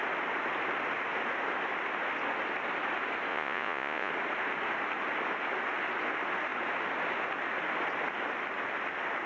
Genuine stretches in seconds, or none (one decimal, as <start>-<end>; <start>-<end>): 0.0-3.3; 4.1-9.3

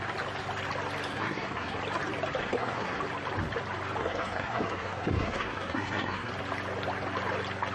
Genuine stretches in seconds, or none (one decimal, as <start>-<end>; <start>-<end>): 0.0-1.1; 1.8-2.4; 3.0-4.0; 6.3-7.7

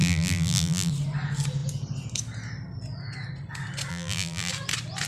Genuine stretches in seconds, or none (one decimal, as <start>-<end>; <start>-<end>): 0.9-3.9; 4.5-5.1

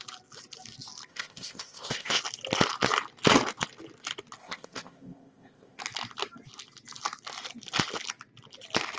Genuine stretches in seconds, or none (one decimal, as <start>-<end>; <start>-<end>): 0.0-1.1; 2.2-4.4; 5.8-9.0

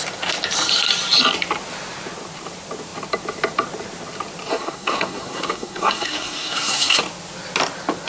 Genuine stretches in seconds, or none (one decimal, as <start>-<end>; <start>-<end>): 0.0-4.5; 7.0-8.1

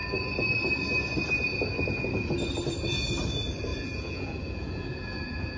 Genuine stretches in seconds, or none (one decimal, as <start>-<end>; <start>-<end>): 0.0-3.7

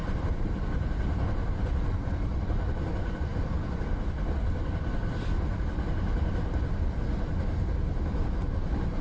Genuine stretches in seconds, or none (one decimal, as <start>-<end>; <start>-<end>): 2.7-8.4